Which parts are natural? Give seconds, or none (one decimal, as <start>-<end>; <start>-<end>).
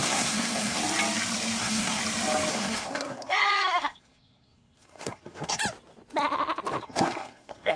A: 0.8-1.6; 2.0-2.5; 5.6-6.8